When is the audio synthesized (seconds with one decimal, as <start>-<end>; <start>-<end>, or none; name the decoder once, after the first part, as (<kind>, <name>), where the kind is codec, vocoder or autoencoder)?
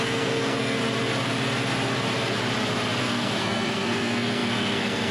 0.0-0.8 (codec, SNAC); 3.0-5.1